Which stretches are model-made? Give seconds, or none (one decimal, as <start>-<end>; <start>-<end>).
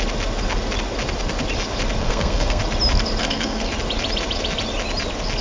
2.0-2.6; 3.2-3.7